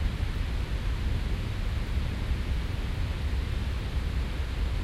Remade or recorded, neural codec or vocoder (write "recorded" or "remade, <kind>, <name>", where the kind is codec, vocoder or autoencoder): recorded